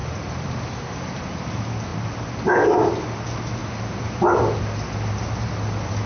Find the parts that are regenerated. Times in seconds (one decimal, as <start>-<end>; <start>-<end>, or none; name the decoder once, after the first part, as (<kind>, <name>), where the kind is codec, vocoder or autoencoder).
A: 0.0-1.2 (vocoder, BigVGAN v2); 1.9-2.9; 3.6-4.6